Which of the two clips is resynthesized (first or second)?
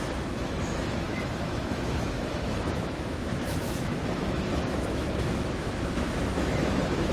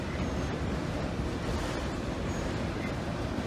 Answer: first